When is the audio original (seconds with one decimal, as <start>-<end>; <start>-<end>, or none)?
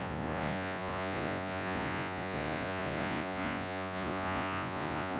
none